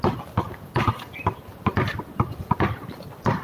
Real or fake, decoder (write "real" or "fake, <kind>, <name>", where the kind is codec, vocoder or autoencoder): real